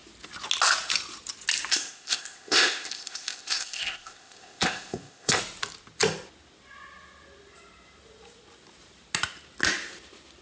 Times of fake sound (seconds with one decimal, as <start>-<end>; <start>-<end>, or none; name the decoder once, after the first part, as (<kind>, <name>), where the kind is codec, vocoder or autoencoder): 1.7-5.4 (codec, ZipCodec)